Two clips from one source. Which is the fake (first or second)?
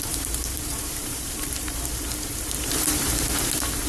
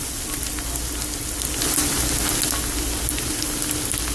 first